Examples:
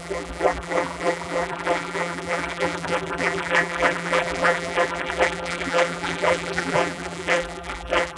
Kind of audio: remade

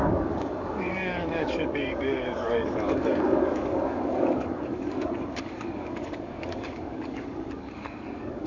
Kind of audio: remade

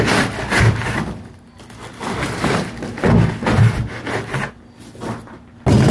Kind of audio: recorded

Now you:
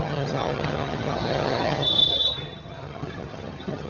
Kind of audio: remade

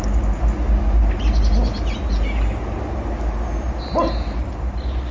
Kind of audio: recorded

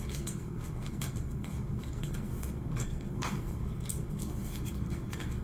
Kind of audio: remade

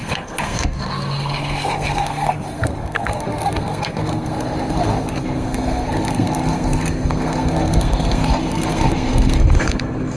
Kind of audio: remade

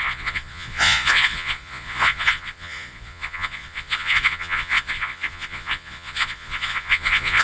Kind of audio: remade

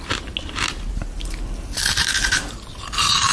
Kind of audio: recorded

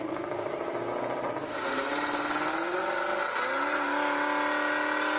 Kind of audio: recorded